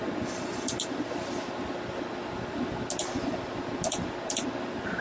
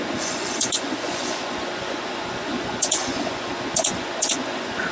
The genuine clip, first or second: first